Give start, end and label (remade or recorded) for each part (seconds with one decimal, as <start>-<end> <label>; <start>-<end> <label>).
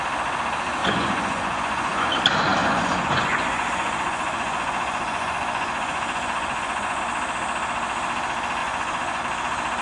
0.0-0.8 recorded; 0.8-2.1 remade; 2.1-2.6 recorded; 2.6-7.0 remade; 7.0-8.6 recorded; 8.6-9.2 remade; 9.2-9.8 recorded